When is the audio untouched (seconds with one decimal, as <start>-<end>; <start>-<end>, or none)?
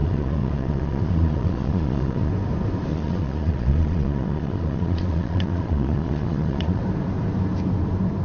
2.3-2.9; 6.8-8.2